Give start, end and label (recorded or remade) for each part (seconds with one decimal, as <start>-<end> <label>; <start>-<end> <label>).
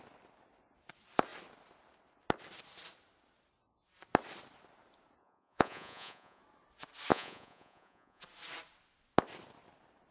0.0-5.2 recorded; 5.2-6.4 remade; 6.4-7.1 recorded; 7.1-8.2 remade; 8.2-10.1 recorded